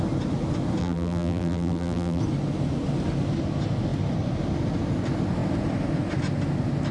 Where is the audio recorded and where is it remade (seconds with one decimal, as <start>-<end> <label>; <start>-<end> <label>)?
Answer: 0.0-0.8 recorded; 0.8-2.2 remade; 2.2-6.9 recorded

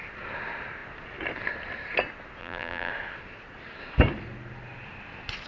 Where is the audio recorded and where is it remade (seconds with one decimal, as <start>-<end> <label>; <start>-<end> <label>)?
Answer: 0.0-2.4 recorded; 2.4-2.9 remade; 2.9-5.5 recorded

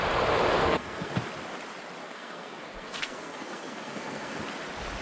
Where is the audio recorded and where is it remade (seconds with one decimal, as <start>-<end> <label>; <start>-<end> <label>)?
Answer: 0.0-0.6 recorded; 0.6-1.1 remade; 1.1-2.0 recorded; 2.0-4.4 remade; 4.4-5.0 recorded